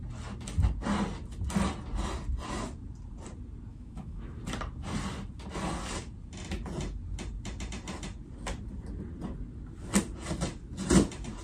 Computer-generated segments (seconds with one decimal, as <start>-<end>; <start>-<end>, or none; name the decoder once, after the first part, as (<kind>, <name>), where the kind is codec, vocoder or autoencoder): 3.7-4.4 (autoencoder, DAC-VAE)